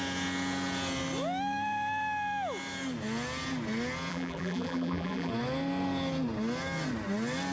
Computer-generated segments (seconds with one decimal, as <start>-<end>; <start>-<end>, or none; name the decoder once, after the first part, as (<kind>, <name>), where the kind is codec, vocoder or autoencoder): 4.1-5.3 (vocoder, BigVGAN v2)